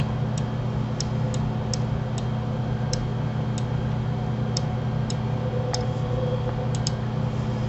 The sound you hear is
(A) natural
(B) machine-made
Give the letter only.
A